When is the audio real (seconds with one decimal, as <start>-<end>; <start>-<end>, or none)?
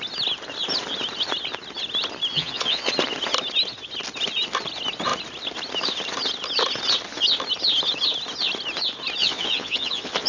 0.0-2.3; 2.9-9.2